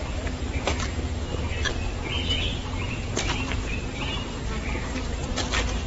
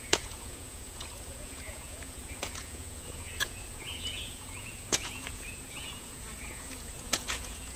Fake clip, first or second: second